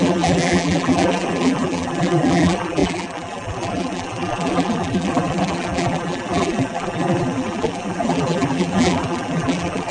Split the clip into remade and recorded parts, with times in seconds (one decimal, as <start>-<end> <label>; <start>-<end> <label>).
0.0-9.9 remade